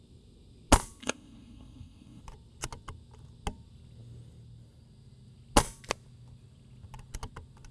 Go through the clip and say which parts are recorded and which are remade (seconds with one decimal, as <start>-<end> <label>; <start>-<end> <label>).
0.0-1.0 recorded; 1.0-2.2 remade; 2.2-7.7 recorded